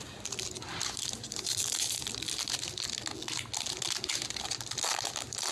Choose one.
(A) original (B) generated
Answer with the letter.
A